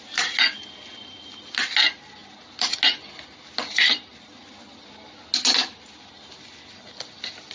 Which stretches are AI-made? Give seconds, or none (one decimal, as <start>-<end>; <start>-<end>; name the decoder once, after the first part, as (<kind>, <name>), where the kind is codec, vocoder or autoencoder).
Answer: none